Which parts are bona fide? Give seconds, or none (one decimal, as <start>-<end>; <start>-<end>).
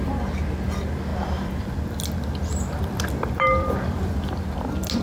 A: 0.0-1.1; 4.1-5.0